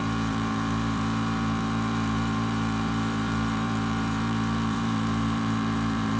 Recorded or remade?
remade